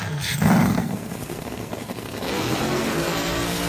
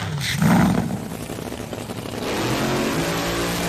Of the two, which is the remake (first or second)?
first